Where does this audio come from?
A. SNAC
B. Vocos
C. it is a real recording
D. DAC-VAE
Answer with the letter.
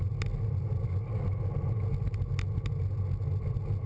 C